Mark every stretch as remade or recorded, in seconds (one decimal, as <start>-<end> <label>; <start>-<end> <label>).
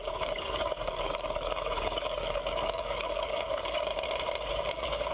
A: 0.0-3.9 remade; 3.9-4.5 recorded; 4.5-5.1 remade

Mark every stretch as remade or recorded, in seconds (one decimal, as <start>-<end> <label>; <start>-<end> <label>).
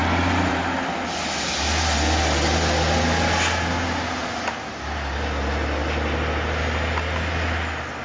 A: 0.0-8.0 recorded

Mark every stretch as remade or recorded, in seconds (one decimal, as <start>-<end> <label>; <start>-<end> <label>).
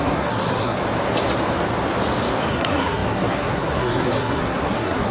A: 0.0-0.8 remade; 0.8-2.5 recorded; 2.5-5.1 remade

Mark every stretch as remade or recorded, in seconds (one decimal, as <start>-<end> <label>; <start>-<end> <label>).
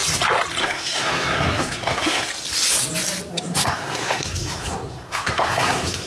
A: 0.0-0.6 recorded; 0.6-2.3 remade; 2.3-3.3 recorded; 3.3-6.1 remade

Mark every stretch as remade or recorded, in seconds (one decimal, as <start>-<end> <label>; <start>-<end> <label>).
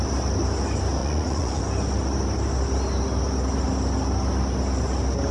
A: 0.0-1.0 recorded; 1.0-1.6 remade; 1.6-5.3 recorded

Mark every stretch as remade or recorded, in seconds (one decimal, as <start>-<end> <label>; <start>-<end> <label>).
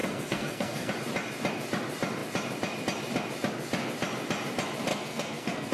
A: 0.0-0.9 remade; 0.9-4.9 recorded; 4.9-5.7 remade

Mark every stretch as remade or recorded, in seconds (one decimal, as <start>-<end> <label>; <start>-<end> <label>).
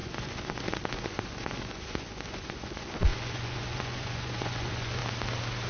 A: 0.0-5.0 remade; 5.0-5.7 recorded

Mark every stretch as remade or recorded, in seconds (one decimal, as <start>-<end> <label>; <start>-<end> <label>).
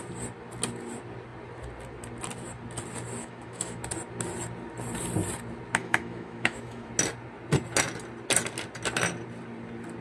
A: 0.0-3.2 recorded; 3.2-3.8 remade; 3.8-5.8 recorded; 5.8-6.9 remade; 6.9-10.0 recorded